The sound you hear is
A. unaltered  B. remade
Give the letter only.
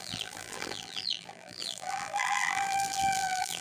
B